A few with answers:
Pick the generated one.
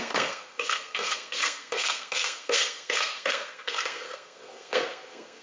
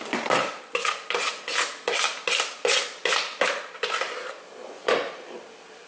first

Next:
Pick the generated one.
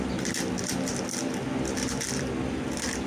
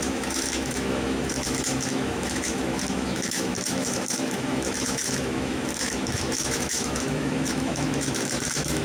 second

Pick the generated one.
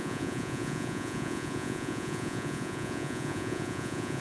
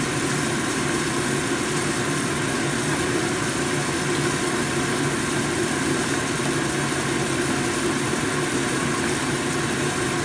first